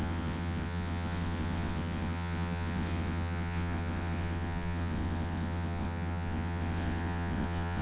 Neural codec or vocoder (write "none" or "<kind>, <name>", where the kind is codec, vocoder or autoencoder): vocoder, WaveNeXt